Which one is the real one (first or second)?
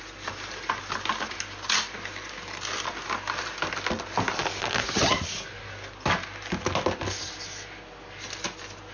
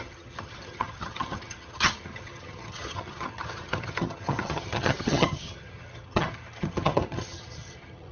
first